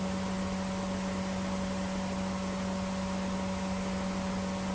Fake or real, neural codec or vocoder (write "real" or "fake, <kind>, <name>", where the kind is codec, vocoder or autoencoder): real